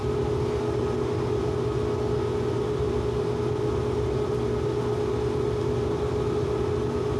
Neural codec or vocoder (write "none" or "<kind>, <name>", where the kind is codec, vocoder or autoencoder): none